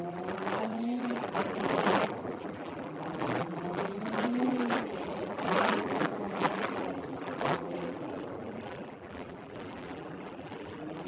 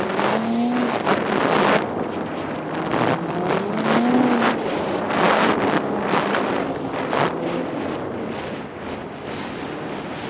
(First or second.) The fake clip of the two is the first